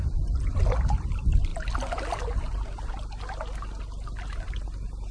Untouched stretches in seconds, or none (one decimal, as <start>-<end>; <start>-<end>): 0.0-5.1